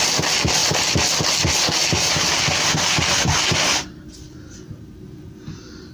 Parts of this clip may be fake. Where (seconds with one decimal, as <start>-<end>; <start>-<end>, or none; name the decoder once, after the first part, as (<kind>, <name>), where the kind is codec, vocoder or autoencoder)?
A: none